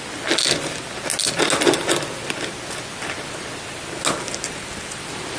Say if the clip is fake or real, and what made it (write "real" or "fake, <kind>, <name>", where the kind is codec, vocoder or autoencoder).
real